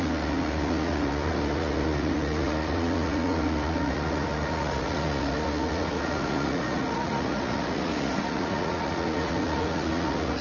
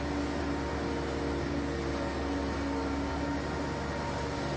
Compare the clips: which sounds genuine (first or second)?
second